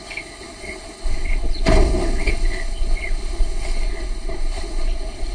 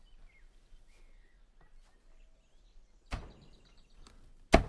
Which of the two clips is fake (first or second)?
first